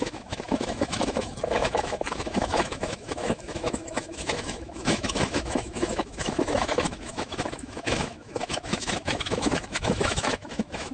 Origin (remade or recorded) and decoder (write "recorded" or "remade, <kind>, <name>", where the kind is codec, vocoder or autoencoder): remade, autoencoder, DAC-VAE